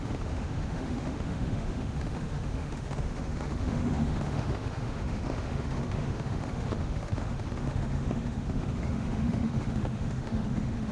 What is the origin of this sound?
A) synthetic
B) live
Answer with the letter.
A